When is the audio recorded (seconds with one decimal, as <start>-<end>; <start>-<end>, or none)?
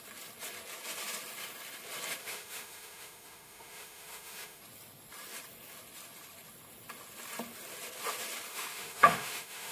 0.0-2.2; 4.6-8.5